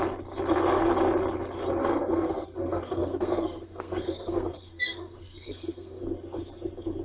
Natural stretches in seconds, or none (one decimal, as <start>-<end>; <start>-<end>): 0.0-1.8; 6.0-7.0